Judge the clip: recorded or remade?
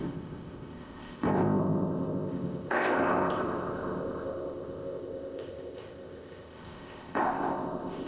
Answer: remade